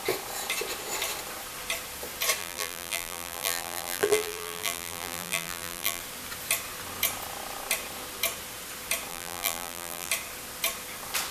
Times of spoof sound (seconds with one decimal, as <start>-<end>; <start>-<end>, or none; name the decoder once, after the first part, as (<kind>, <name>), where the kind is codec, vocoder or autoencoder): 2.4-6.0 (vocoder, BigVGAN v2); 9.1-10.1

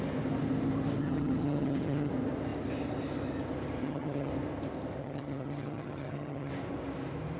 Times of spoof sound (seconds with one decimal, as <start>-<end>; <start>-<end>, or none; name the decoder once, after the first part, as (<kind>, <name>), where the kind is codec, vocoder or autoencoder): 1.0-2.1 (vocoder, HiFi-GAN); 3.8-4.3; 5.0-6.5